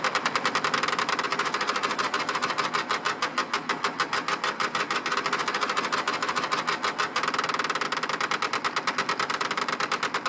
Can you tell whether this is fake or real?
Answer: real